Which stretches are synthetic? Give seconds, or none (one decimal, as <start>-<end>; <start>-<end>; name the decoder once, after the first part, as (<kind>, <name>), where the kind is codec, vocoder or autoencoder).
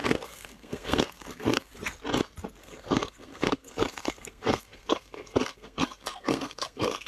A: 0.0-1.7 (codec, SNAC); 2.6-7.1